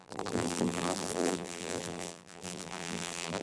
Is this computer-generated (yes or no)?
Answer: yes